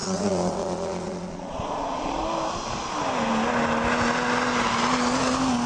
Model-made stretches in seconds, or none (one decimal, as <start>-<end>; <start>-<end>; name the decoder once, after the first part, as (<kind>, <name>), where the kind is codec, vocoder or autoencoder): 0.0-2.2 (vocoder, Vocos)